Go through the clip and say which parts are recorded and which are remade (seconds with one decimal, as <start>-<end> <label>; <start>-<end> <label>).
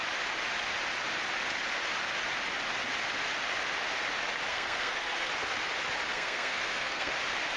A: 0.0-4.5 recorded; 4.5-5.3 remade; 5.3-6.1 recorded; 6.1-7.1 remade; 7.1-7.6 recorded